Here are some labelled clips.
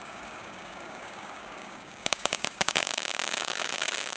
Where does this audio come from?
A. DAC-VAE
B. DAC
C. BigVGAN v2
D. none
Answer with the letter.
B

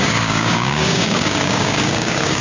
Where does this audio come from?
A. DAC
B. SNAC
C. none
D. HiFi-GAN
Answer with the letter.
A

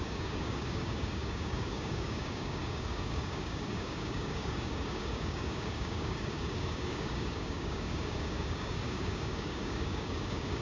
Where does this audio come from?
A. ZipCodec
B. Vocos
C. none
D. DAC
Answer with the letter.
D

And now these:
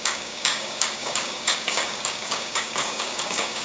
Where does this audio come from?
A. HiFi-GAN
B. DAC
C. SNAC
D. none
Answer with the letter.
B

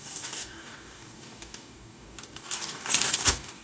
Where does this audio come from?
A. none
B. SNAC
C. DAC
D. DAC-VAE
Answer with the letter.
C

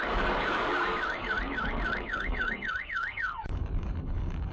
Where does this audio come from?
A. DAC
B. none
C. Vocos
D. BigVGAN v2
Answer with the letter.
A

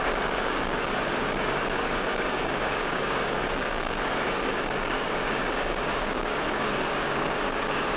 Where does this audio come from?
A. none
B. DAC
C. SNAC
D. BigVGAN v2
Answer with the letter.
B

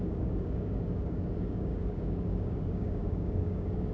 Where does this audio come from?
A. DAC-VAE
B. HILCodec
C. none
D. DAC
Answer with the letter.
D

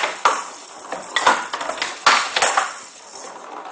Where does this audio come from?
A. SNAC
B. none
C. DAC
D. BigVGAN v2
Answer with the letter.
B